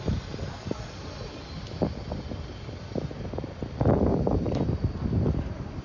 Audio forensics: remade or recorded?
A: recorded